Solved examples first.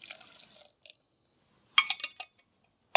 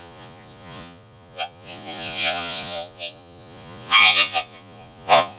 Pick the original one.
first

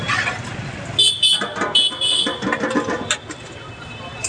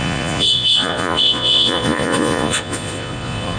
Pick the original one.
first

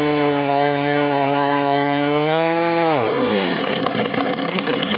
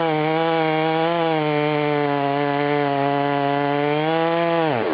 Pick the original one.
second